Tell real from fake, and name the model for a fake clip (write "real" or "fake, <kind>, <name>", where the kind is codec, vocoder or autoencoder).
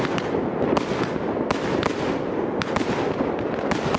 fake, vocoder, BigVGAN v2